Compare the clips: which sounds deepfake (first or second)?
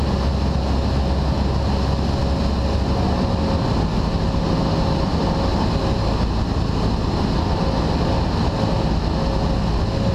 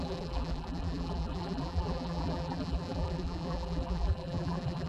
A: second